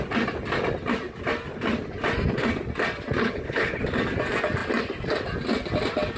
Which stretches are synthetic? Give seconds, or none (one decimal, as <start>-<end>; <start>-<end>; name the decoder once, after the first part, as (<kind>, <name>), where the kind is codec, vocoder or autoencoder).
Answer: 3.2-3.8 (codec, HILCodec)